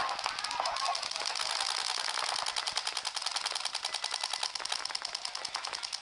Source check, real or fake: real